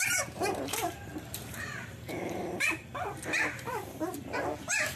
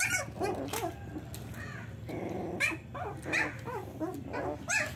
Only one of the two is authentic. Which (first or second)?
second